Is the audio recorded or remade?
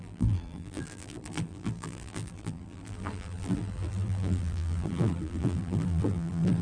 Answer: remade